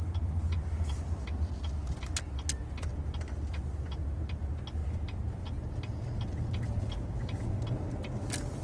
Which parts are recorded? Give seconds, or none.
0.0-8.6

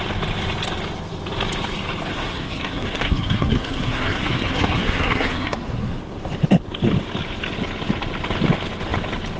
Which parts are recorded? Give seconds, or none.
0.0-2.1; 6.0-9.4

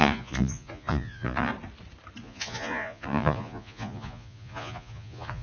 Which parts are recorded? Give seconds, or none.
1.5-2.2

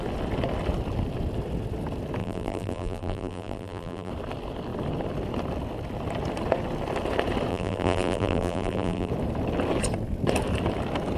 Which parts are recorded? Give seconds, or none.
0.0-2.2; 4.1-7.5; 9.1-11.2